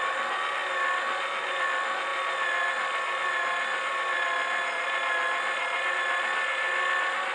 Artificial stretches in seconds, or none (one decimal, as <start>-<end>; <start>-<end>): none